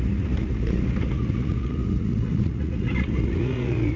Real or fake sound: fake